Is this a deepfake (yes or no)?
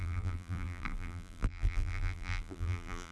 yes